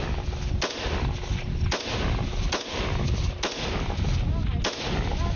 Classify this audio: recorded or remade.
recorded